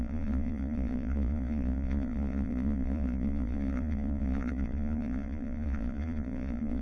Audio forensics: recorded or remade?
remade